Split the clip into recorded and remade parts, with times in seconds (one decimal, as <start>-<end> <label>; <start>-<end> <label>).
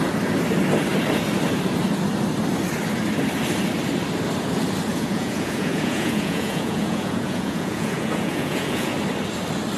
0.0-4.9 recorded; 4.9-8.9 remade; 8.9-9.8 recorded